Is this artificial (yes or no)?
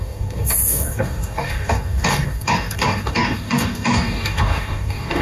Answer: yes